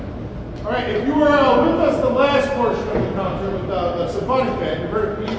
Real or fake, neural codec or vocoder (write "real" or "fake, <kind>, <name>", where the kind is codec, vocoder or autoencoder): real